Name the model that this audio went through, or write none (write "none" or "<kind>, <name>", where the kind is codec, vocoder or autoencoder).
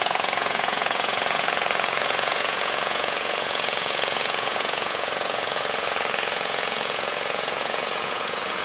vocoder, Vocos